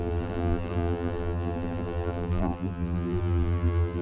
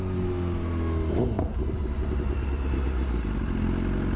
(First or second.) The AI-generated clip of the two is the first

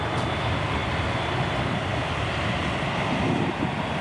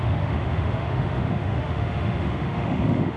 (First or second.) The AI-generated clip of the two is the second